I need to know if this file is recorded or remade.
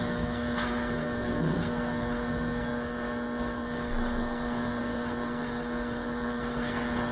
remade